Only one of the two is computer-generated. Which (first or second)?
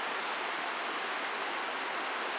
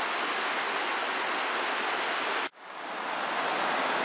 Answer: second